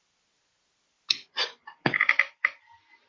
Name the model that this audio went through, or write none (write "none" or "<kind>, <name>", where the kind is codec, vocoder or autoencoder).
none